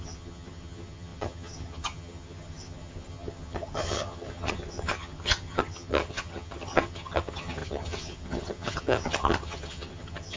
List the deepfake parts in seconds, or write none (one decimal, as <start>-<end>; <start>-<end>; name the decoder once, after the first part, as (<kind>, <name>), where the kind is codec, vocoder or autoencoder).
0.0-10.4 (vocoder, HiFi-GAN)